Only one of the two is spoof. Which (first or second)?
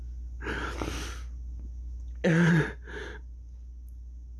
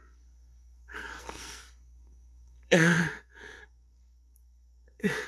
second